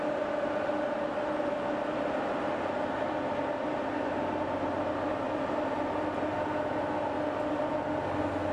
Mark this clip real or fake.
real